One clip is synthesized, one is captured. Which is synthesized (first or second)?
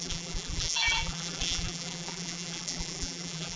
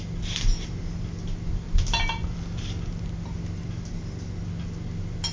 first